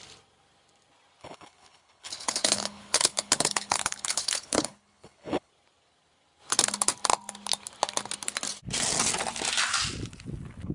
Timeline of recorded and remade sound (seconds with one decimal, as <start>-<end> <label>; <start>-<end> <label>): 0.0-1.2 recorded; 1.2-5.5 remade; 5.5-10.7 recorded